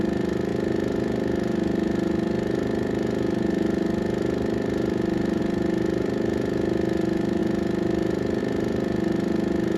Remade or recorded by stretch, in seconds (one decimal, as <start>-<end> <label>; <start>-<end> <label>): 0.0-9.8 recorded